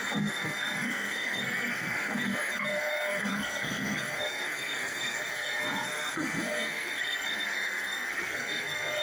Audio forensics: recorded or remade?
remade